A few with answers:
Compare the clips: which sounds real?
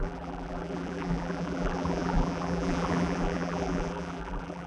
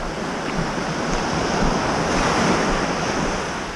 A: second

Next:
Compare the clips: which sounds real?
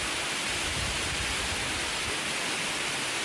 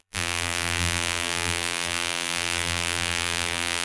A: first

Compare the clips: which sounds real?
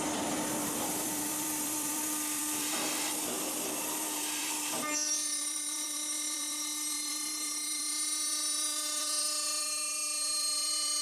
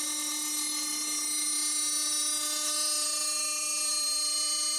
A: second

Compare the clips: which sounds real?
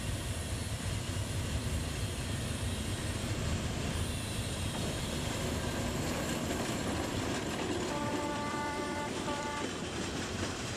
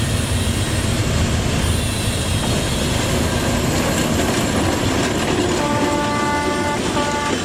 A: second